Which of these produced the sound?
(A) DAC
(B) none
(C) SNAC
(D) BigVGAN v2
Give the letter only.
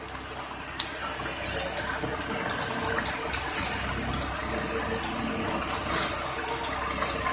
B